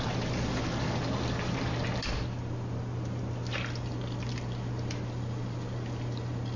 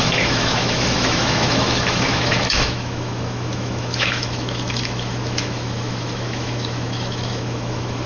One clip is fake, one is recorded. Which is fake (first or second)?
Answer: second